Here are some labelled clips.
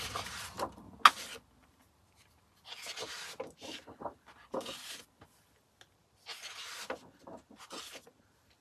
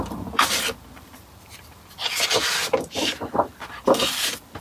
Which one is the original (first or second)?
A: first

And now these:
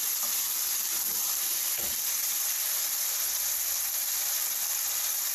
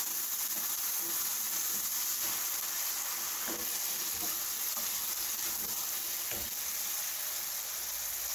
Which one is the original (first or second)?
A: second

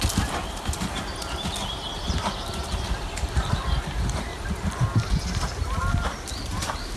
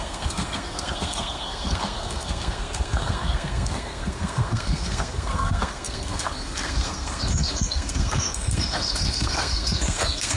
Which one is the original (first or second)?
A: first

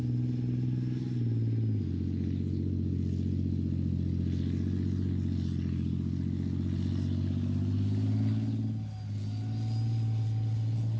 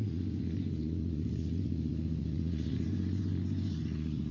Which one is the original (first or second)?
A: first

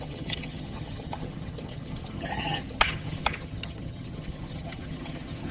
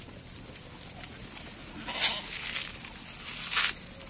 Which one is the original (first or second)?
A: second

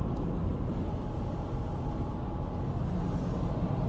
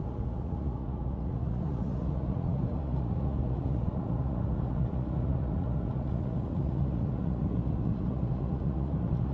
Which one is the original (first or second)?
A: first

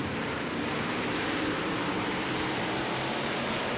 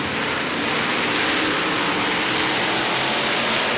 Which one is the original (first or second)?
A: second